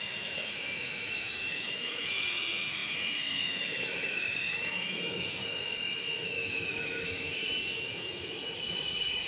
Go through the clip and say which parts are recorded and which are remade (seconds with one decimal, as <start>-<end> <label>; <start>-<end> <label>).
0.0-9.3 remade

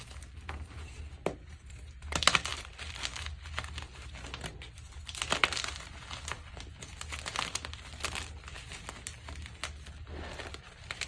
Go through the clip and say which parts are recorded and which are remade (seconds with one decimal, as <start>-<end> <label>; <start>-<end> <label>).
0.0-11.1 recorded